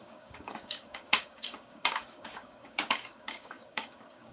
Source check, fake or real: fake